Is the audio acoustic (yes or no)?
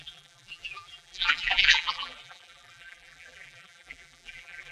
no